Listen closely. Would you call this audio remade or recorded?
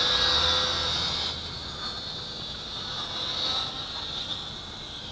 recorded